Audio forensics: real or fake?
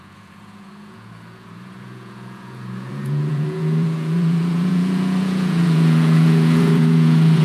fake